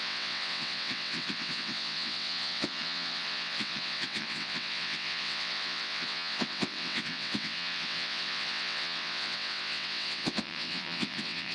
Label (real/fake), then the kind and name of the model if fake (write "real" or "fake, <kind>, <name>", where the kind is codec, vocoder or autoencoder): fake, vocoder, WaveNeXt